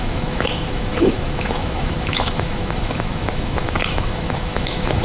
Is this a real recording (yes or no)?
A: no